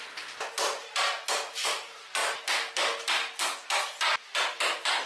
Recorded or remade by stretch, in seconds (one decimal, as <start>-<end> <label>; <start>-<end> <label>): 0.0-5.1 recorded